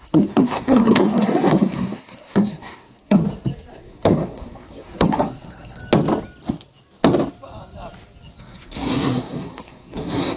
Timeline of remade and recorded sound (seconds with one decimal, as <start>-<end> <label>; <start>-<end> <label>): 0.0-3.2 remade; 3.2-3.7 recorded; 3.7-5.8 remade; 5.8-8.4 recorded; 8.4-10.4 remade